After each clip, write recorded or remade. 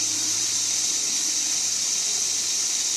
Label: recorded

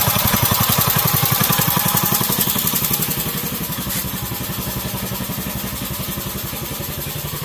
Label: recorded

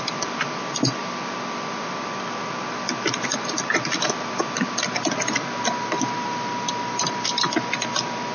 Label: recorded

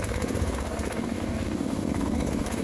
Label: remade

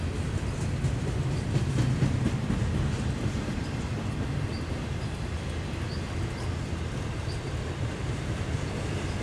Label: recorded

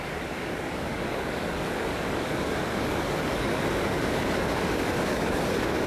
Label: remade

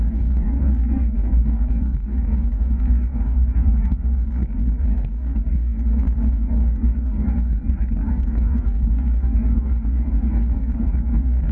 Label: remade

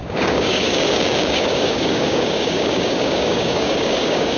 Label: remade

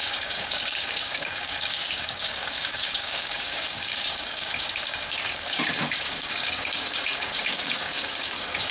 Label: remade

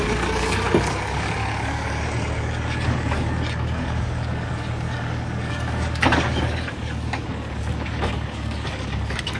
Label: remade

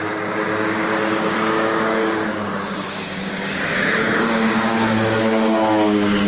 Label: remade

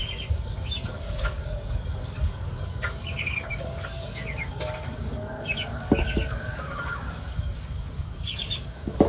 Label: remade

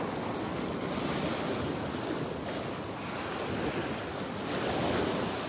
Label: recorded